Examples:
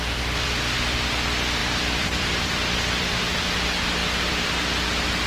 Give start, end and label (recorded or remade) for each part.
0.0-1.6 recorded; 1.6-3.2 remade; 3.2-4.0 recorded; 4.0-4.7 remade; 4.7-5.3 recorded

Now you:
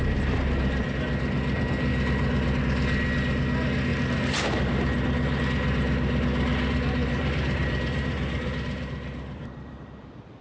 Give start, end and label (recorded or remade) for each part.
0.0-3.9 recorded; 3.9-5.4 remade; 5.4-7.0 recorded; 7.0-9.8 remade; 9.8-10.4 recorded

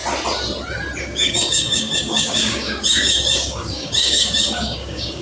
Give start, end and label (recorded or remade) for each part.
0.0-1.0 recorded; 1.0-5.2 remade